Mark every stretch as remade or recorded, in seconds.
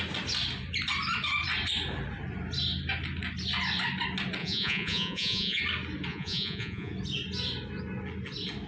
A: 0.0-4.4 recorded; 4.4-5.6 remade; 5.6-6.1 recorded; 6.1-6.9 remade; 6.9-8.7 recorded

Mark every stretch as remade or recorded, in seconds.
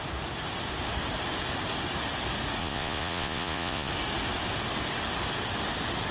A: 0.0-2.6 recorded; 2.6-3.9 remade; 3.9-6.1 recorded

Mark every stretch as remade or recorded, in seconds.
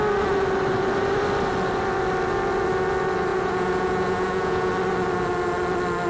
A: 0.0-3.3 recorded; 3.3-4.7 remade; 4.7-6.1 recorded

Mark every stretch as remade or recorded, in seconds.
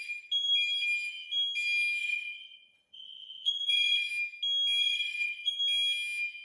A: 0.0-2.0 recorded; 2.0-4.1 remade; 4.1-4.8 recorded; 4.8-5.6 remade; 5.6-6.4 recorded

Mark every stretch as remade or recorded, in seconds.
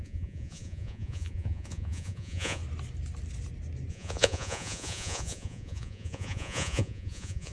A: 0.0-2.6 remade; 2.6-3.9 recorded; 3.9-7.5 remade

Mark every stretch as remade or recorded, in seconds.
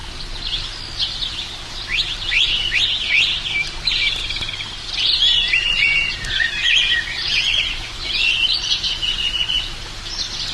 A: 0.0-5.7 recorded; 5.7-9.8 remade; 9.8-10.5 recorded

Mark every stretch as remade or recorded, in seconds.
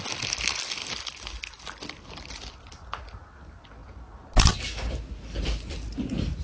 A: 0.0-6.4 recorded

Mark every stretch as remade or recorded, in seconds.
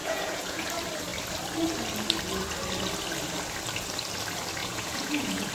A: 0.0-0.7 remade; 0.7-4.6 recorded; 4.6-5.5 remade